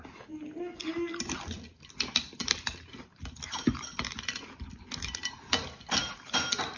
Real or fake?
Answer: real